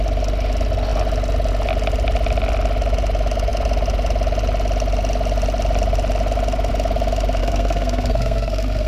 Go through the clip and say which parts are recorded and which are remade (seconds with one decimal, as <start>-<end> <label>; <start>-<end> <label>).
0.0-7.4 recorded; 7.4-8.9 remade